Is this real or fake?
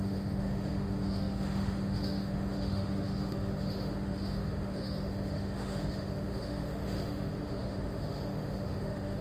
fake